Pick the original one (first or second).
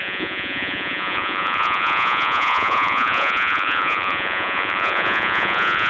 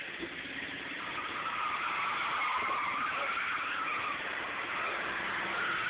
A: second